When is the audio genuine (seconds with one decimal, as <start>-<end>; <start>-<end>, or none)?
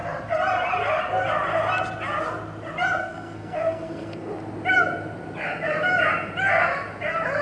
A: 0.0-3.0; 4.3-7.4